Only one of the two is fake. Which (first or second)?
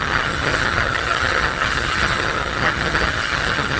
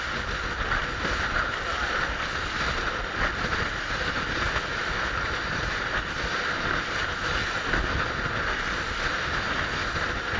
first